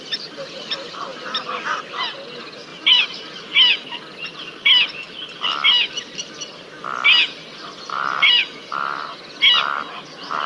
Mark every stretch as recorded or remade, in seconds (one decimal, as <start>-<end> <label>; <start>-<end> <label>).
0.0-2.7 recorded; 2.7-3.5 remade; 3.5-7.9 recorded; 7.9-8.6 remade; 8.6-10.5 recorded